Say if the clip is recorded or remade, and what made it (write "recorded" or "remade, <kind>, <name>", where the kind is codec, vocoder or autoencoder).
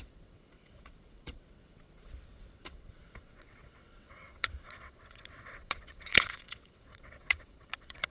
remade, vocoder, WaveNeXt